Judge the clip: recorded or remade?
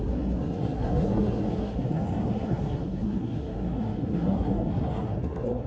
remade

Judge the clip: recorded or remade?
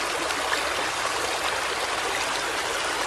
recorded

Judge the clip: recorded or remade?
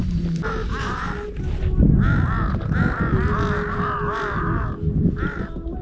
recorded